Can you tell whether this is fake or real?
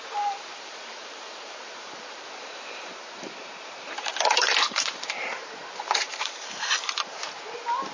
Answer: fake